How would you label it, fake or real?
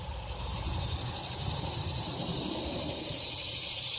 real